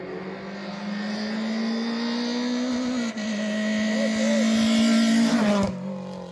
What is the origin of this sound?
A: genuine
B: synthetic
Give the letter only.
A